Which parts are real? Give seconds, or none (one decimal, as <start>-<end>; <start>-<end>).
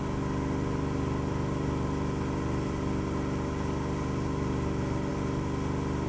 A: 0.0-6.1